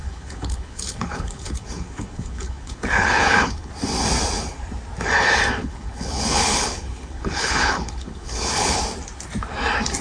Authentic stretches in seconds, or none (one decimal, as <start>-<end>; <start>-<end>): 3.7-5.6; 8.8-10.0